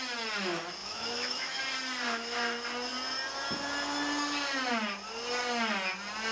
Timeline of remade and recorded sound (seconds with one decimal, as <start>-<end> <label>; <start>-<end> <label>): 0.0-0.8 recorded; 0.8-1.6 remade; 1.6-6.3 recorded